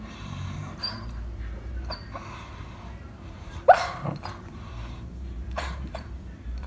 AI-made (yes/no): yes